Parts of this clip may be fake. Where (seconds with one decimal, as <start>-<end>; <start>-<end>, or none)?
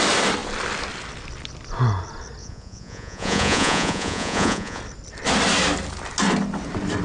2.4-4.8